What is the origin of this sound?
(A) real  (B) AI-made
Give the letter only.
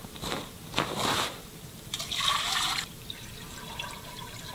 B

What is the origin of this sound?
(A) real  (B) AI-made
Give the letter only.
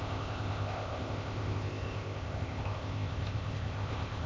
B